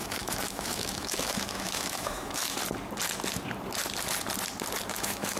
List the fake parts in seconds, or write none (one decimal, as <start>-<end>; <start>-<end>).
0.0-2.6; 4.9-5.4